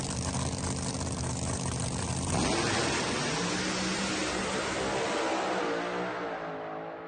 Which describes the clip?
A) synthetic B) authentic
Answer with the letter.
B